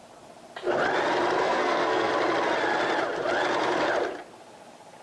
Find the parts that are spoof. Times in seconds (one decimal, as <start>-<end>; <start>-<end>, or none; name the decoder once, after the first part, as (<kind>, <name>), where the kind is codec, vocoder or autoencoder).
1.4-2.1 (codec, SNAC)